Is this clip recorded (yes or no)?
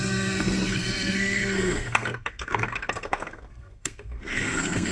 no